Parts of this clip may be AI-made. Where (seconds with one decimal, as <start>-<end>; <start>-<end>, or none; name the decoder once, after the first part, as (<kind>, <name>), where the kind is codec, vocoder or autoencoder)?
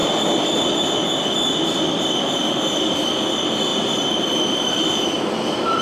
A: 2.2-5.8 (vocoder, BigVGAN v2)